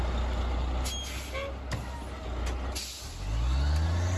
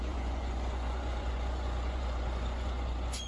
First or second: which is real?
first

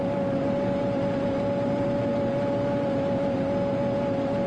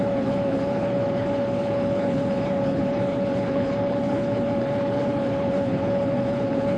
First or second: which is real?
first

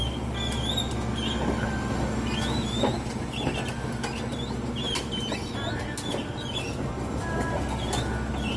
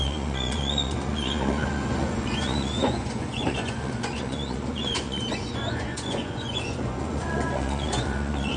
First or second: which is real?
first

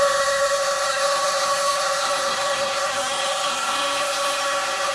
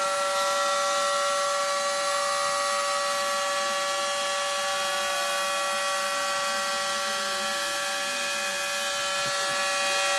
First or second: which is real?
second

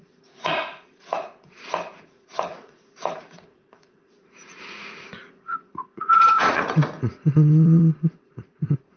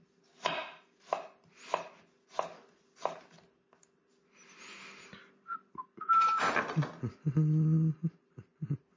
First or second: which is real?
second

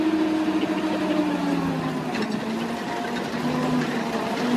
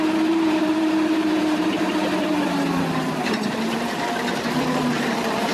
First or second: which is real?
first